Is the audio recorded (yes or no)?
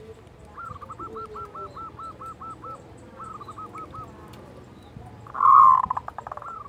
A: yes